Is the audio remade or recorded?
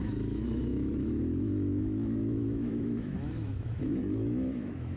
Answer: remade